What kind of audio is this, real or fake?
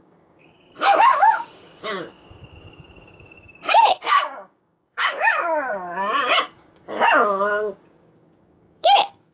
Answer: fake